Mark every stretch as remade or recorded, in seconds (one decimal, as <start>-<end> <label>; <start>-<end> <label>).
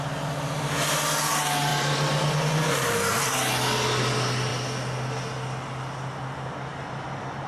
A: 0.0-7.5 recorded